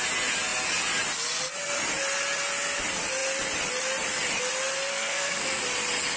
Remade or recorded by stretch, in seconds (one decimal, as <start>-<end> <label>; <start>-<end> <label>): 0.0-4.9 recorded; 4.9-5.6 remade; 5.6-6.2 recorded